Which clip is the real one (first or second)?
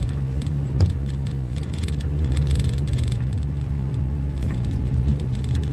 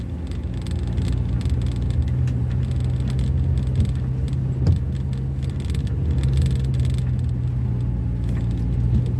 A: second